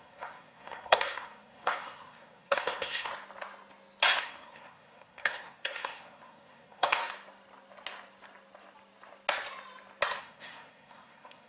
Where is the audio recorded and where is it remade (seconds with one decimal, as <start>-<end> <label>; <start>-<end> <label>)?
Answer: 0.0-3.1 remade; 3.1-4.2 recorded; 4.2-7.0 remade; 7.0-10.2 recorded; 10.2-11.5 remade